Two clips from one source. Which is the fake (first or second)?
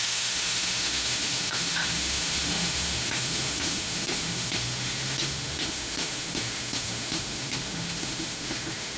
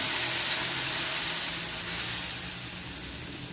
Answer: first